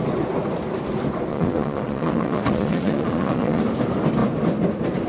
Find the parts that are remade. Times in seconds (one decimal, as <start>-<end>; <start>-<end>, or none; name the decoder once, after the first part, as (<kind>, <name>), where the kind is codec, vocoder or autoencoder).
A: 1.3-3.6 (vocoder, Vocos)

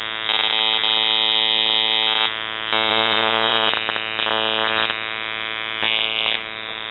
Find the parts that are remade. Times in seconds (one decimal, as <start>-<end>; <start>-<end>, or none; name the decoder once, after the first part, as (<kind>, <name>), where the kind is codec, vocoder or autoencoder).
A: 2.9-3.7 (vocoder, Vocos)